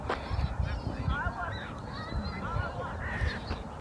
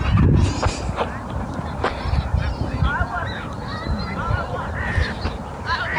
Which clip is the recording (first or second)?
first